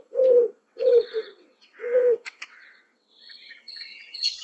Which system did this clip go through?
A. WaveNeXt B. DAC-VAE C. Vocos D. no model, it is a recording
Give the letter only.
A